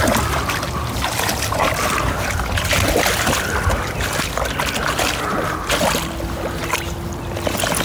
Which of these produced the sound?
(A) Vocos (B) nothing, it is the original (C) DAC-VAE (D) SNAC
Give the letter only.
B